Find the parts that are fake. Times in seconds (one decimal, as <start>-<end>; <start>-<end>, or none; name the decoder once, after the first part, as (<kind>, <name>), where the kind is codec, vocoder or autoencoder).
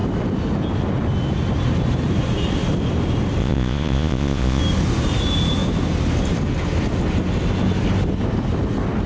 3.4-4.6 (vocoder, Vocos)